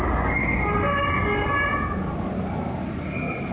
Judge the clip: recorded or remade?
recorded